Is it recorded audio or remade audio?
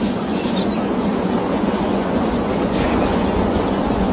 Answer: remade